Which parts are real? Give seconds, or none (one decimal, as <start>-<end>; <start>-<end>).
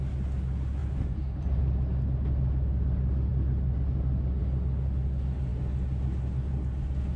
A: 0.0-0.8; 1.6-7.2